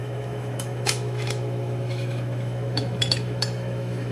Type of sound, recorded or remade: remade